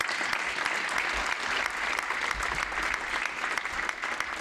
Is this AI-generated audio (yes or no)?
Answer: no